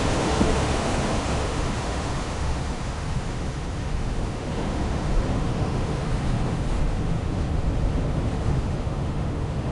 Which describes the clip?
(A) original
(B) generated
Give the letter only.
B